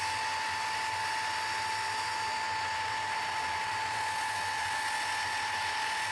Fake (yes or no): no